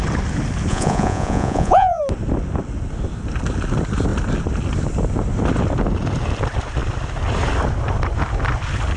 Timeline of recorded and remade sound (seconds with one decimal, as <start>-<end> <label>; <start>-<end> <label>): 0.0-0.7 recorded; 0.7-2.0 remade; 2.0-9.0 recorded